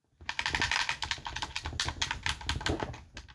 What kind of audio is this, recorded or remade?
recorded